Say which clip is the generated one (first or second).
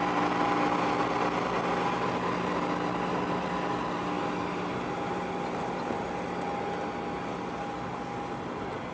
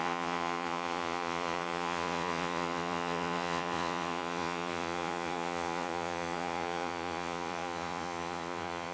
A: second